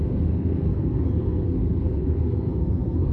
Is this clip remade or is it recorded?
remade